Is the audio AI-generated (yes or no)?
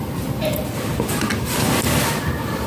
no